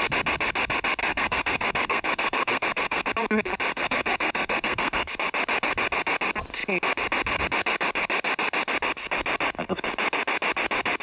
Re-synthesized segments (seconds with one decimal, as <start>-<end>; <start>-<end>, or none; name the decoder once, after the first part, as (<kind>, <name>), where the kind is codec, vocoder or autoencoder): 1.0-3.1 (codec, SNAC); 3.7-5.1